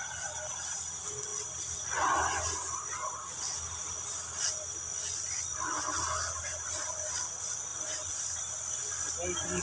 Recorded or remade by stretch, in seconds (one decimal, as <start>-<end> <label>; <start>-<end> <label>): 0.0-9.6 recorded